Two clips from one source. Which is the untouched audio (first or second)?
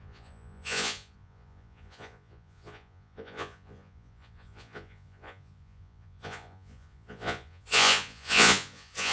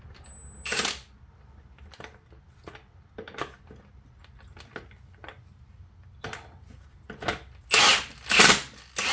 second